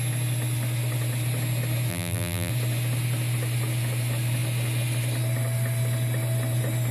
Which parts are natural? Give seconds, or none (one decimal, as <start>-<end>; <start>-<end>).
0.0-1.9; 2.5-6.9